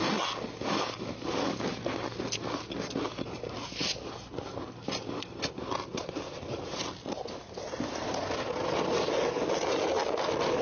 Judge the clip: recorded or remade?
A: recorded